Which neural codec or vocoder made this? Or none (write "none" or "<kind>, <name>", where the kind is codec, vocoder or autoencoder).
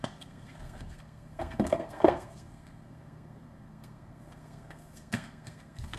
codec, SNAC